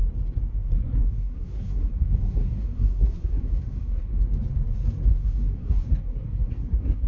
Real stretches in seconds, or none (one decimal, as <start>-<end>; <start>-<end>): 0.0-0.5; 4.1-5.1